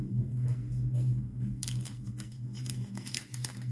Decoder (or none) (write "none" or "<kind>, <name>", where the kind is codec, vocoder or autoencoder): codec, SNAC